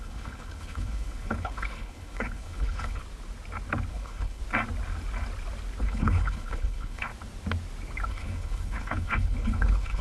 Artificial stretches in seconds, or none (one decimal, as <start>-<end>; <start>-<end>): 0.0-3.0; 3.9-4.4; 5.8-7.1; 8.1-10.0